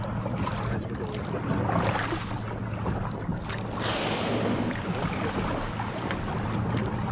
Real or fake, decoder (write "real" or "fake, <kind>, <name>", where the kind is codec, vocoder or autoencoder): real